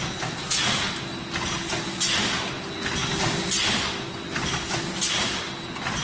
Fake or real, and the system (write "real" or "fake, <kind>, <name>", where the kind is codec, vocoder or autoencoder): real